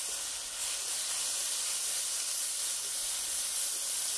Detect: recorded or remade recorded